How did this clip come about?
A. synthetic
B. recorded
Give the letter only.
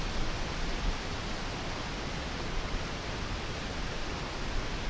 B